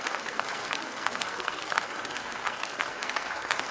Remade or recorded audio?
remade